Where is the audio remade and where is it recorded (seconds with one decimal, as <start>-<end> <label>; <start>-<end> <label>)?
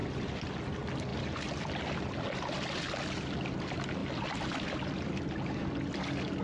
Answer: 0.0-0.5 remade; 0.5-1.1 recorded; 1.1-1.9 remade; 1.9-4.0 recorded; 4.0-5.3 remade; 5.3-6.4 recorded